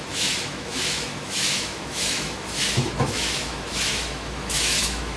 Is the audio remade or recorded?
remade